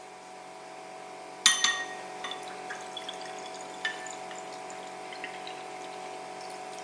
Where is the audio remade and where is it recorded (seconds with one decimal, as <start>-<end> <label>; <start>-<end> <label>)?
0.0-6.8 recorded